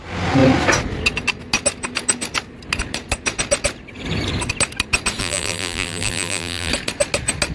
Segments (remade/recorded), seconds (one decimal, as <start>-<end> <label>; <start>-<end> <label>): 0.0-5.2 recorded; 5.2-6.7 remade; 6.7-7.5 recorded